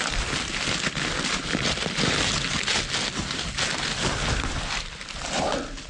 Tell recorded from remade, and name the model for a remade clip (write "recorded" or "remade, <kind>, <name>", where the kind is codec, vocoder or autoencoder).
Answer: recorded